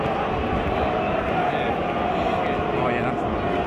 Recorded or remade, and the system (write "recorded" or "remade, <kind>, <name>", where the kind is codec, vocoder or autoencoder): recorded